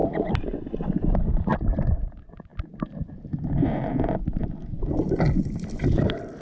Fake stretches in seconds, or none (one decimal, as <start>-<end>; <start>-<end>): none